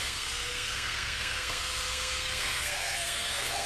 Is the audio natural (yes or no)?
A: no